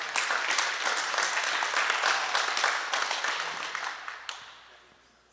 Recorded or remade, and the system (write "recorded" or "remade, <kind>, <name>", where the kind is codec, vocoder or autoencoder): recorded